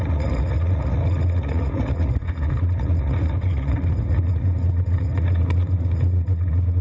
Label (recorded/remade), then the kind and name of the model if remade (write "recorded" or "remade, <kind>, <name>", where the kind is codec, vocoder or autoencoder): remade, vocoder, Vocos